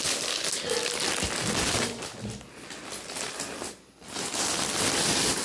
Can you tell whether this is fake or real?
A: real